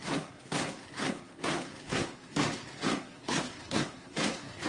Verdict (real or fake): fake